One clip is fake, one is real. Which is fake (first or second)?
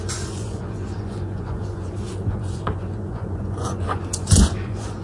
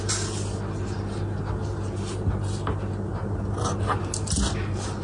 first